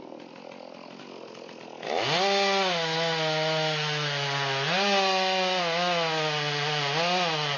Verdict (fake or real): real